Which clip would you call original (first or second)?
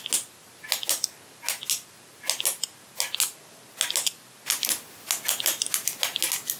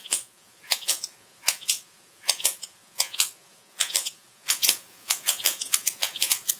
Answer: first